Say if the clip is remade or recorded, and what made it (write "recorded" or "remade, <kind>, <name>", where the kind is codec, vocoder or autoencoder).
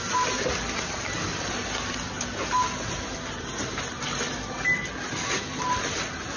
recorded